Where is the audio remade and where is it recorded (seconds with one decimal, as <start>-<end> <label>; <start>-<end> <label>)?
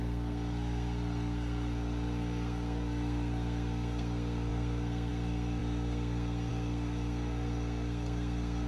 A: 0.0-8.7 remade